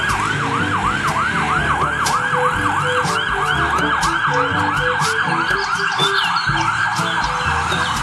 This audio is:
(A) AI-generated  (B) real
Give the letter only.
B